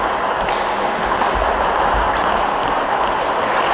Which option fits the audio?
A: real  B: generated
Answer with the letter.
A